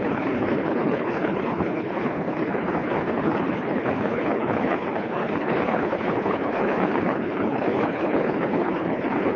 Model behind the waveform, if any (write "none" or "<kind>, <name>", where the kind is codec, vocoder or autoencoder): codec, HILCodec